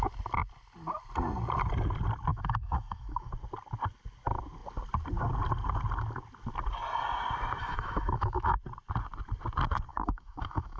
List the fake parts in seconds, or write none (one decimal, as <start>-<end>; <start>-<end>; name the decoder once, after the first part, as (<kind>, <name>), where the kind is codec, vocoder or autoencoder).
2.3-3.3 (autoencoder, DAC-VAE); 7.6-8.6; 9.9-10.8